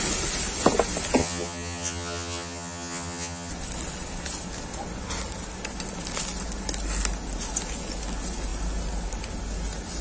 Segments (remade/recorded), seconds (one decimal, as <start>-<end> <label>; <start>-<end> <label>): 0.0-1.2 recorded; 1.2-3.5 remade; 3.5-10.0 recorded